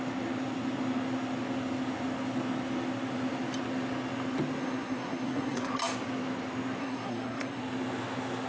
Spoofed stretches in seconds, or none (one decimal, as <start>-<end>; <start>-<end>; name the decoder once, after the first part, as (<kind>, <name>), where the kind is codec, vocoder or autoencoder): 4.6-5.7 (codec, SNAC); 6.8-7.6